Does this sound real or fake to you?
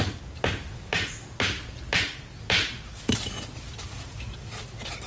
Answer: real